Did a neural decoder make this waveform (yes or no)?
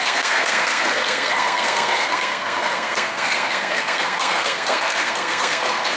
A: yes